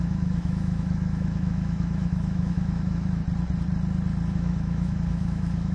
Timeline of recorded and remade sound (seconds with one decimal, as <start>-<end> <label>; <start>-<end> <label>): 0.0-3.2 remade; 3.2-4.3 recorded; 4.3-5.7 remade